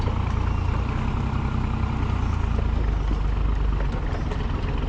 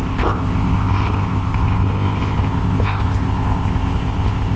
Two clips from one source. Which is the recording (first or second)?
first